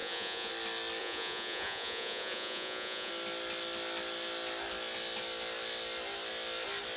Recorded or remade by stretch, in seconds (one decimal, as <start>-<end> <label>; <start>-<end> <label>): 0.0-0.5 remade; 0.5-1.0 recorded; 1.0-3.1 remade; 3.1-7.0 recorded